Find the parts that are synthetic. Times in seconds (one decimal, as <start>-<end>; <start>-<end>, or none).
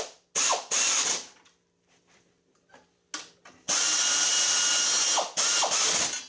none